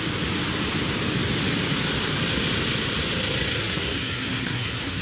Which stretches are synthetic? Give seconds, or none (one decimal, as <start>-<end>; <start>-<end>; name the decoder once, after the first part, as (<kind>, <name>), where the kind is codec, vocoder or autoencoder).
3.6-5.0 (codec, SNAC)